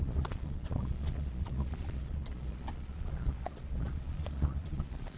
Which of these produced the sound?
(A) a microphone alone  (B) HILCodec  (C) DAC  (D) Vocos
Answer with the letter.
D